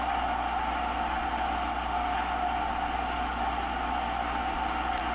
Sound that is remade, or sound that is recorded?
recorded